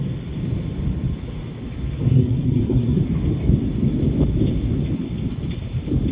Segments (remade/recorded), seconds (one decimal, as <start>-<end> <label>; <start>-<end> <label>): 0.0-2.1 recorded; 2.1-3.0 remade; 3.0-6.1 recorded